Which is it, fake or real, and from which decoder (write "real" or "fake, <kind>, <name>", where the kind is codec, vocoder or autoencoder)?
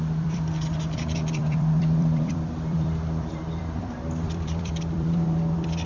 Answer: fake, vocoder, BigVGAN v2